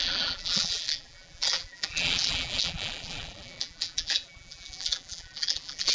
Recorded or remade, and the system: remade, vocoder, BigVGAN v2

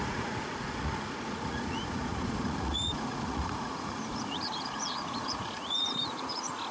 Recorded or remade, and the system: remade, vocoder, Vocos